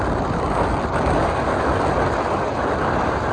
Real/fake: real